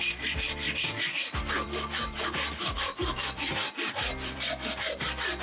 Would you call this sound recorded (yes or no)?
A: no